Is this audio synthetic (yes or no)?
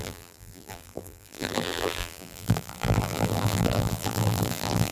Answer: yes